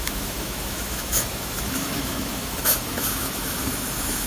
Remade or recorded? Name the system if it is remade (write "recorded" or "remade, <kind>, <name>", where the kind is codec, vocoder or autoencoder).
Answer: remade, autoencoder, DAC-VAE